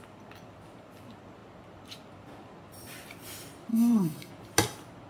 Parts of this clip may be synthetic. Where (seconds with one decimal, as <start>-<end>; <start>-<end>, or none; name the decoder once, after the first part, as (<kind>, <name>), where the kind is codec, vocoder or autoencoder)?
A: 3.7-4.3 (codec, SNAC)